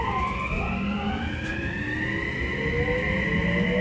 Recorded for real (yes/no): yes